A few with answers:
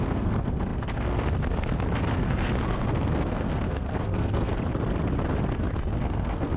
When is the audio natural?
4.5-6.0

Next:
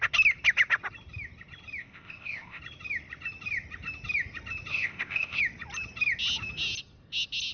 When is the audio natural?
0.0-1.8; 2.6-4.7; 5.4-7.5

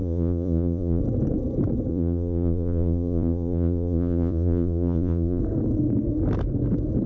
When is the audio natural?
1.0-1.9; 5.4-7.1

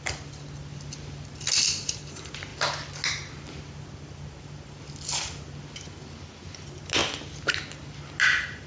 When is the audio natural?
0.0-8.7

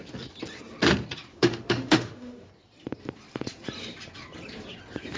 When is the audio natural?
0.0-1.3; 2.5-5.2

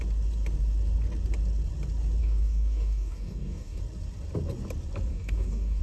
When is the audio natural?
0.0-2.2; 3.8-5.1